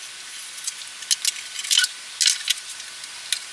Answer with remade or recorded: recorded